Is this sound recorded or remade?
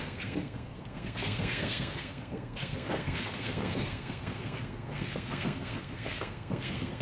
remade